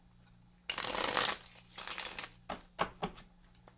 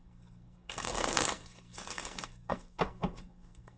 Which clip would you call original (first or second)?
first